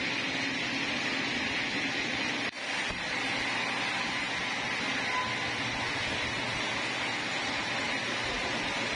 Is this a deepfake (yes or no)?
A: no